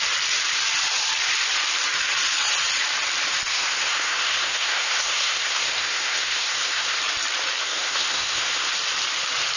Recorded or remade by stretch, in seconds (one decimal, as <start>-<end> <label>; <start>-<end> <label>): 0.0-3.5 recorded; 3.5-7.0 remade; 7.0-7.6 recorded; 7.6-8.7 remade; 8.7-9.6 recorded

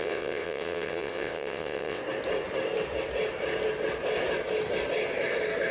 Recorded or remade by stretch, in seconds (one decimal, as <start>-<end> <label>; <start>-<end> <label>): 0.0-2.0 remade; 2.0-5.7 recorded

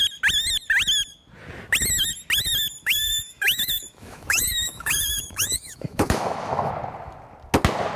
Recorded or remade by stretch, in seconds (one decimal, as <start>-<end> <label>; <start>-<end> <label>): 0.0-2.8 recorded; 2.8-6.7 remade; 6.7-8.0 recorded

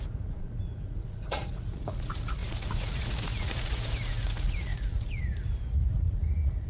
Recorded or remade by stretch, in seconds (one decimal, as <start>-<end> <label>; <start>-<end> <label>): 0.0-6.7 remade